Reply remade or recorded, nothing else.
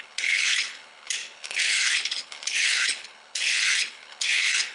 remade